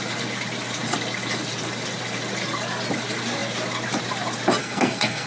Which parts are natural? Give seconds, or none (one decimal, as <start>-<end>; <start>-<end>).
0.0-4.6